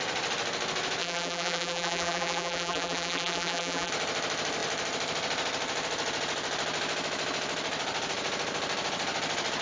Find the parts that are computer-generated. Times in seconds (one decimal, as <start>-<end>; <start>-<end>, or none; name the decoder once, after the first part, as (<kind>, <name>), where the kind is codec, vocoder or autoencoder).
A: 1.0-3.9 (vocoder, BigVGAN v2)